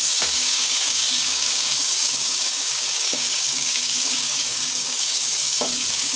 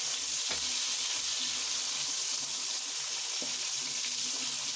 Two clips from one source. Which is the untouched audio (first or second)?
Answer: second